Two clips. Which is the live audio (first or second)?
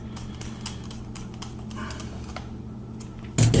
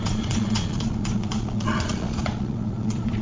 first